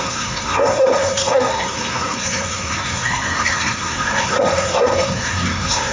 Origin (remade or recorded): remade